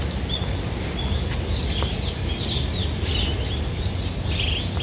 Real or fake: real